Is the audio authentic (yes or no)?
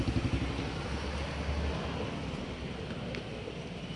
yes